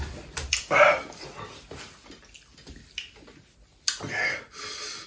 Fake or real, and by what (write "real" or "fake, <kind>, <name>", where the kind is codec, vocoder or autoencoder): real